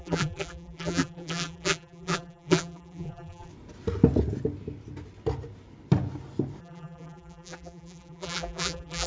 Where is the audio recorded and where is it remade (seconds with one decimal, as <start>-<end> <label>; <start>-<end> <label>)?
0.0-3.5 remade; 3.5-6.6 recorded; 6.6-9.1 remade